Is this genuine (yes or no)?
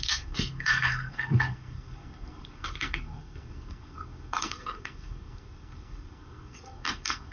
no